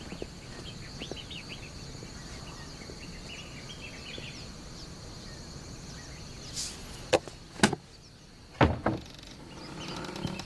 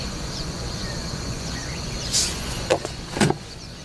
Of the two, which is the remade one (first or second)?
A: second